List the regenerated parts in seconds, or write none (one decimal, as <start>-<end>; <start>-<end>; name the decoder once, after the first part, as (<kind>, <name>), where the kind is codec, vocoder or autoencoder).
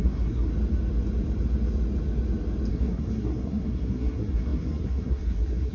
0.0-0.5 (codec, SNAC); 2.7-5.7